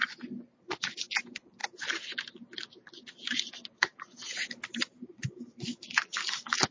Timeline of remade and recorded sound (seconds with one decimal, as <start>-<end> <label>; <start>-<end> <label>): 0.0-1.6 recorded; 1.6-5.6 remade; 5.6-6.7 recorded